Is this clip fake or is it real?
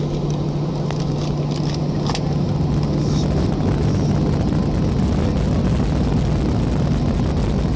real